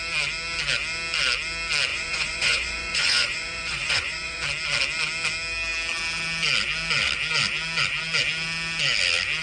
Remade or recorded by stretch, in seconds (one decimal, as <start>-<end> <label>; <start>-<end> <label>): 0.0-1.9 recorded; 1.9-4.4 remade; 4.4-9.4 recorded